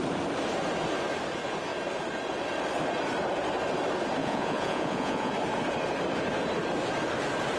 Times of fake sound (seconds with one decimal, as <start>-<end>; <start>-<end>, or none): 4.2-5.3